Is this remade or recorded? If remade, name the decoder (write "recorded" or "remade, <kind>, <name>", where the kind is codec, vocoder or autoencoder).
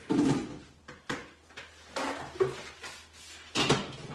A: recorded